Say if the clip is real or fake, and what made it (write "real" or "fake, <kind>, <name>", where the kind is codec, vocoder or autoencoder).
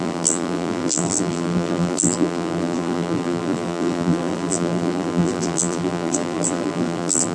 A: fake, vocoder, BigVGAN v2